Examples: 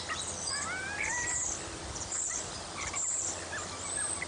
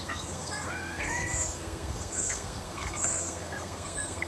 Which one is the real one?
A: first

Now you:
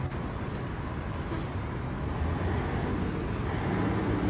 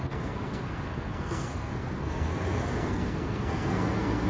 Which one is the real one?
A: first